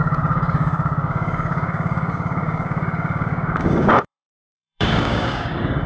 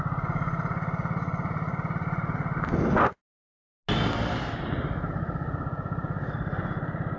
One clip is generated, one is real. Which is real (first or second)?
second